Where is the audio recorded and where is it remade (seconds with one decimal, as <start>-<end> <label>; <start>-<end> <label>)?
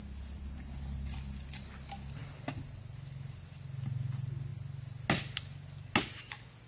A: 0.0-6.7 recorded